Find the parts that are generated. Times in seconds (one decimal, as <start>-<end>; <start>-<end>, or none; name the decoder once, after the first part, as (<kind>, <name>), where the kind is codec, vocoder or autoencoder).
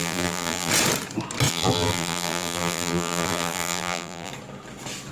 0.0-0.7 (vocoder, BigVGAN v2); 1.5-4.3